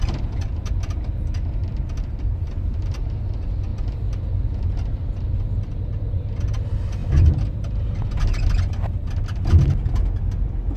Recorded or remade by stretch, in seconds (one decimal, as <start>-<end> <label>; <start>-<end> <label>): 0.0-10.8 recorded